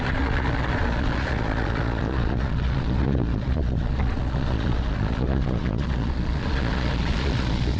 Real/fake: fake